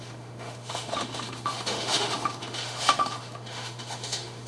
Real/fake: fake